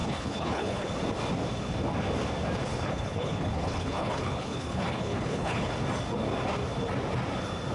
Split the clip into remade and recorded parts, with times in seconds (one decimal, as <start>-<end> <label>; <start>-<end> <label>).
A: 0.0-0.9 remade; 0.9-2.7 recorded; 2.7-5.7 remade; 5.7-7.7 recorded